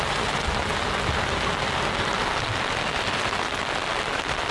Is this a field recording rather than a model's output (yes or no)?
yes